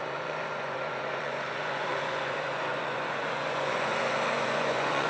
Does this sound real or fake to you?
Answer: fake